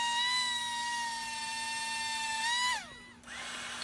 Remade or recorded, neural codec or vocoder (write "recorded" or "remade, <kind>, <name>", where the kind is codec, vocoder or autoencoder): recorded